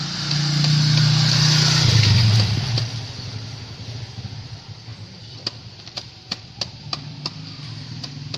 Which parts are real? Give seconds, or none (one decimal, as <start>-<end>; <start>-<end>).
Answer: 0.0-8.4